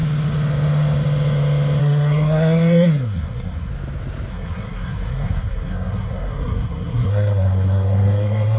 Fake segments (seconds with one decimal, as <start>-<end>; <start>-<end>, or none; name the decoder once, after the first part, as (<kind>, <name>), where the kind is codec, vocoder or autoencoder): 1.8-3.7 (codec, SNAC); 4.3-8.6